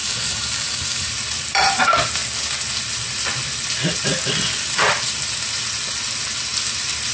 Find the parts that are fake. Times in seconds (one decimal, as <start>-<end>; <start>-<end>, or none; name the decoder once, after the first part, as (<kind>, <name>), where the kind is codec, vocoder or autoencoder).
0.0-1.1 (codec, DAC)